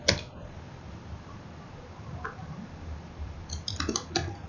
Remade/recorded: recorded